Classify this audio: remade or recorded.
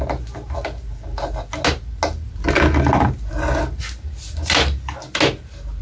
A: recorded